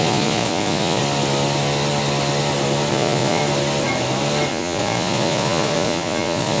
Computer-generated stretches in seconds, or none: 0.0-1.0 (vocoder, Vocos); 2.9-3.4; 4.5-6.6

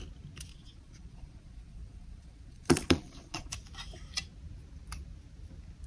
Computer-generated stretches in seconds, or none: 0.5-3.5 (vocoder, Vocos)